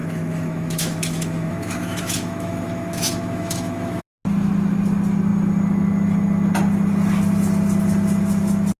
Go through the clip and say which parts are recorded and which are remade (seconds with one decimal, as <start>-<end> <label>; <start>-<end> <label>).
0.0-4.0 remade; 4.0-8.8 recorded